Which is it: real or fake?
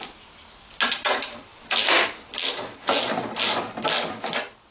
real